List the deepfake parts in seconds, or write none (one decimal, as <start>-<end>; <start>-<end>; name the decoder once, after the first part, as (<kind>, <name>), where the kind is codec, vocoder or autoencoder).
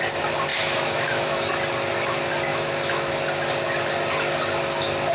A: 0.5-1.5 (autoencoder, DAC-VAE); 2.5-3.1